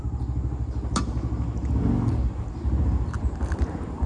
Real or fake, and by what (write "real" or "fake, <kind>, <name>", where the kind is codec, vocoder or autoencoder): real